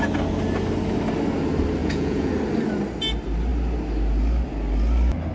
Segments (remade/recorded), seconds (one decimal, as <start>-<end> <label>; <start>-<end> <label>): 0.0-1.8 recorded; 1.8-2.3 remade; 2.3-5.3 recorded